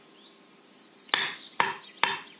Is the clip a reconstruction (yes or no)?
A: no